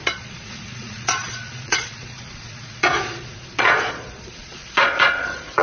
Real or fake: fake